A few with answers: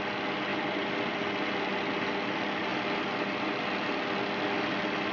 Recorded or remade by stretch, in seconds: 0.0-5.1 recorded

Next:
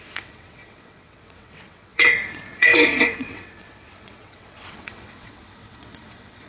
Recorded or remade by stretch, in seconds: 0.0-6.5 remade

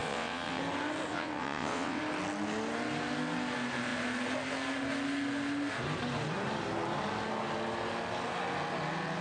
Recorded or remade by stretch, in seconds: 0.0-0.6 remade; 0.6-1.1 recorded; 1.1-2.0 remade; 2.0-9.2 recorded

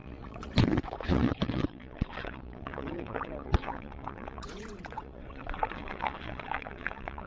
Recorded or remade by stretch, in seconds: 0.0-7.3 remade

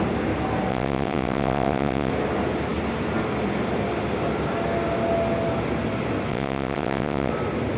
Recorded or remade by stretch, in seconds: 0.0-0.7 recorded; 0.7-2.1 remade; 2.1-6.3 recorded; 6.3-7.3 remade; 7.3-7.8 recorded

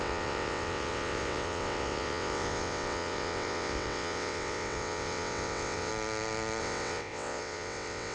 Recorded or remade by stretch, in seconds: 0.0-5.9 remade; 5.9-6.6 recorded; 6.6-8.1 remade

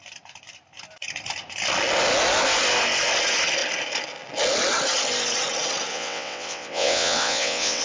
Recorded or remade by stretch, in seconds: 0.0-5.9 recorded; 5.9-7.8 remade

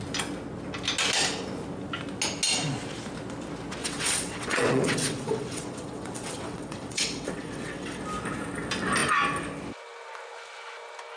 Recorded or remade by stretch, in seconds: 0.0-3.8 recorded; 3.8-8.0 remade; 8.0-11.2 recorded